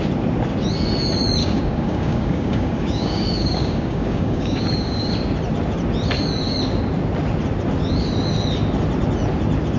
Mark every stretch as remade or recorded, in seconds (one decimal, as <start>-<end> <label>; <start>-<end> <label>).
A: 0.0-1.4 recorded; 1.4-5.1 remade; 5.1-9.8 recorded